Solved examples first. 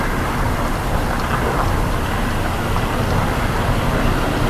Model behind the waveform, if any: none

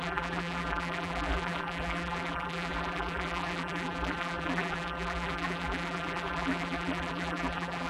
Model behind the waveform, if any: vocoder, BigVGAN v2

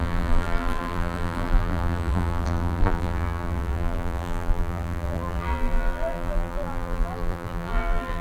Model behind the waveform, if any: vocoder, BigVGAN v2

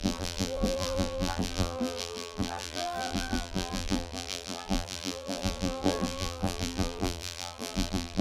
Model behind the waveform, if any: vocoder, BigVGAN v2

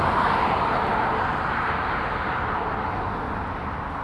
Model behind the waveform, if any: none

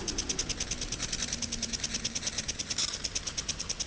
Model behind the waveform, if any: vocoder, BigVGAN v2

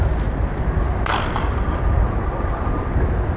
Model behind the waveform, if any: none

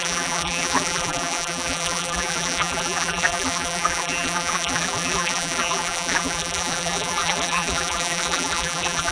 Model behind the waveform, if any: vocoder, BigVGAN v2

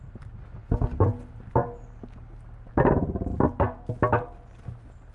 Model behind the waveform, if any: none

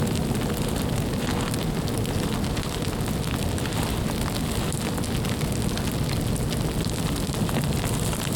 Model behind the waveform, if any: none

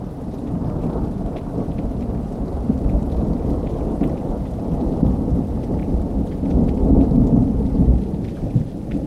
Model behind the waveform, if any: vocoder, BigVGAN v2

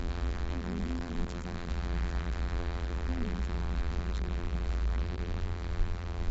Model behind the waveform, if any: vocoder, BigVGAN v2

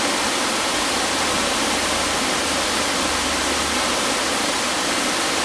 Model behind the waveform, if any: none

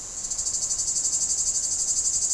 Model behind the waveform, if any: none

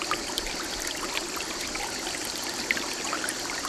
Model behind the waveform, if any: none